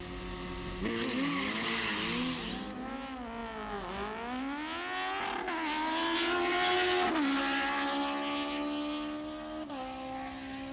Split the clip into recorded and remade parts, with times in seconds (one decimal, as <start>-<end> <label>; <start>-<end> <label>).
0.0-10.7 recorded